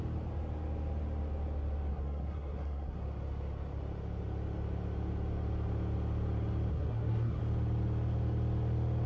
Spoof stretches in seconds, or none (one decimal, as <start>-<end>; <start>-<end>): 1.9-3.0; 6.7-7.4